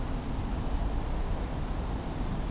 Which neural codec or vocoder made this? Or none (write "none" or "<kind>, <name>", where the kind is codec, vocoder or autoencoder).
none